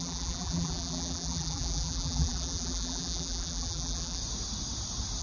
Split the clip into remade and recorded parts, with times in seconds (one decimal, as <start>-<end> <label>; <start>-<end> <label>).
0.0-4.2 remade; 4.2-5.2 recorded